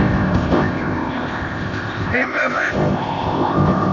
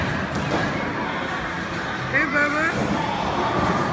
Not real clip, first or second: first